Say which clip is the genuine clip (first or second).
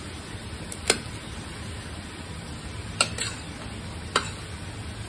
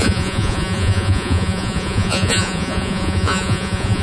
first